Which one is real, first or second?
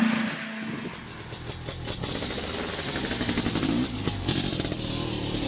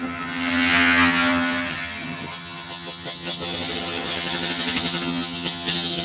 first